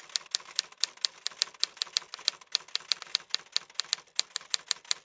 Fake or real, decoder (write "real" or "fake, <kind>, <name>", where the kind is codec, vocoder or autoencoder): real